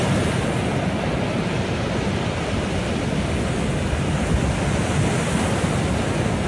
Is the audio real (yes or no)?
yes